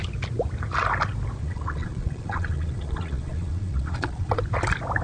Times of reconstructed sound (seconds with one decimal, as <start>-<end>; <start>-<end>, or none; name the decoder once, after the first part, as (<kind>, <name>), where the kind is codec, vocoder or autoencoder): 1.4-4.4 (vocoder, Vocos)